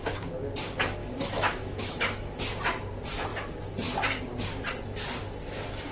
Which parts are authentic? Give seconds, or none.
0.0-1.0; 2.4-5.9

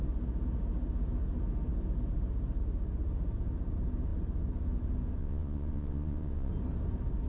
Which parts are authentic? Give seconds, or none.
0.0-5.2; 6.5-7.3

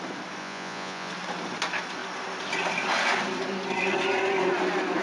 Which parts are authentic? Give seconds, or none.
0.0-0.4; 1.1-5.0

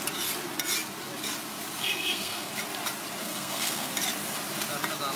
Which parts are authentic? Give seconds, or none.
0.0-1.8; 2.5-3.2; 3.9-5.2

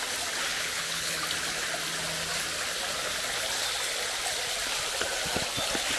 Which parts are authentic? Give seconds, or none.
0.0-0.5; 1.2-6.0